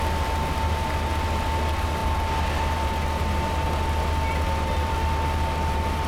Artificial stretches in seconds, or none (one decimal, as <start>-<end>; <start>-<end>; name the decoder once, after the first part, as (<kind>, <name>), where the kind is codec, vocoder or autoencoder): none